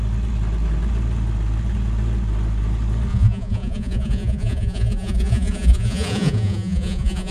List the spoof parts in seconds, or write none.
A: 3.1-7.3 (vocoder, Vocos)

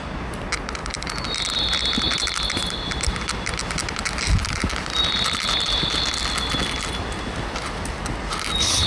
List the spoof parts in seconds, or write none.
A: none

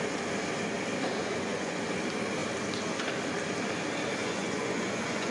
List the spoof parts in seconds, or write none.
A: 1.2-1.8 (vocoder, Vocos); 4.2-5.3

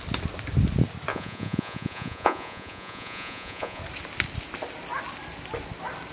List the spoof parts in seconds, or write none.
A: 1.1-3.8 (vocoder, Vocos)

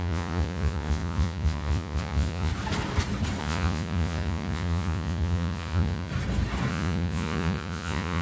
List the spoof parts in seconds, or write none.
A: 0.0-2.5 (vocoder, Vocos); 3.4-6.1; 6.7-8.2

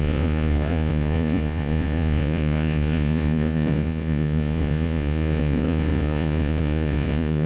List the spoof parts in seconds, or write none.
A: 0.0-7.5 (vocoder, Vocos)